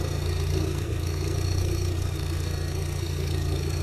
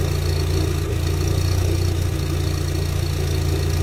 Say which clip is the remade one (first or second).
first